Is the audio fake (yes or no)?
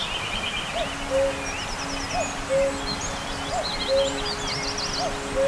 no